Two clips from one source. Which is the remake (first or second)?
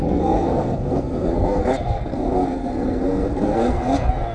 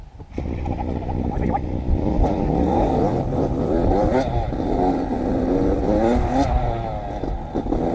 first